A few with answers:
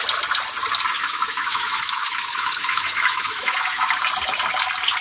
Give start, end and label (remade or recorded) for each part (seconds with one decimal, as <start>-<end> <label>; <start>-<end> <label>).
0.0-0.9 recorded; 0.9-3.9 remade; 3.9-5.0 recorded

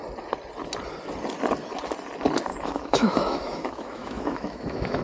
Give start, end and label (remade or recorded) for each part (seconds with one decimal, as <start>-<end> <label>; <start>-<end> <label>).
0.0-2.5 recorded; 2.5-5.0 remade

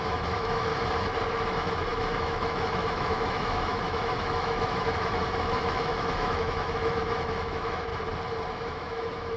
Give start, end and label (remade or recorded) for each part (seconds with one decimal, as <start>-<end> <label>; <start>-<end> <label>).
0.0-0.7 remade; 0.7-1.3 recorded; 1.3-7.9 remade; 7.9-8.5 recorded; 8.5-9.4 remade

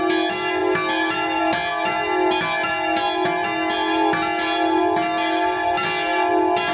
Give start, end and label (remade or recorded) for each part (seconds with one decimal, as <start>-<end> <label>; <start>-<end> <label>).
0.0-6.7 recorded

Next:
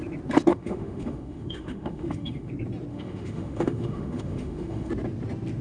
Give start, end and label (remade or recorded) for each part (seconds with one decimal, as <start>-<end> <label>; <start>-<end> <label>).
0.0-0.5 recorded; 0.5-2.5 remade; 2.5-2.9 recorded; 2.9-4.9 remade; 4.9-5.6 recorded